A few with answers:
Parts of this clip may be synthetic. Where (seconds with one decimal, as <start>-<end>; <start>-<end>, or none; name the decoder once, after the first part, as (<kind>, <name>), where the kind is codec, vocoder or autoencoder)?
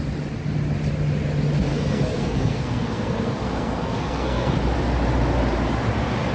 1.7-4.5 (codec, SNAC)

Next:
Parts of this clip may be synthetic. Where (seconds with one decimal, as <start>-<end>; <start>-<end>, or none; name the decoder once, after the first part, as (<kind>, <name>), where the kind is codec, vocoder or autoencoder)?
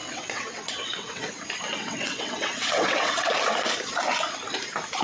0.0-1.3 (vocoder, WaveNeXt); 1.8-3.3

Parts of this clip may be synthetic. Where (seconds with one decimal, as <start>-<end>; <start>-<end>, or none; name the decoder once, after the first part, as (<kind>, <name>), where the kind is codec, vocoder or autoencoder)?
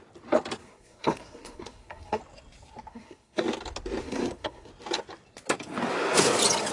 0.6-2.2 (codec, SNAC); 2.9-3.4; 4.0-4.7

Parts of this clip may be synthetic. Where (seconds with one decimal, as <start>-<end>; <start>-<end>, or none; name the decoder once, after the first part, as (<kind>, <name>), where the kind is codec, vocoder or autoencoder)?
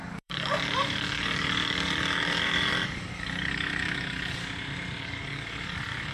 0.0-4.4 (codec, DAC); 5.0-6.1